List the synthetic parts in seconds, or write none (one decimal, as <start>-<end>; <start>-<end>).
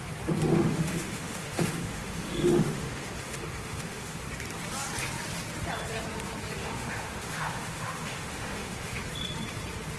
0.5-4.2; 6.6-9.0